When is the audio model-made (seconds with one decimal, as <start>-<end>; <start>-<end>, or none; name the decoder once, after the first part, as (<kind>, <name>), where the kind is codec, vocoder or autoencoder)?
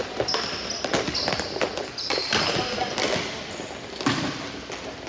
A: none